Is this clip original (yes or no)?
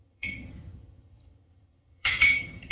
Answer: no